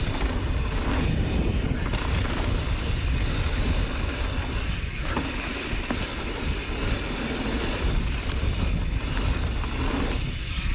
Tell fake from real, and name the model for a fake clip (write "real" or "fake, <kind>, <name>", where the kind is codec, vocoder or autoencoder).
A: real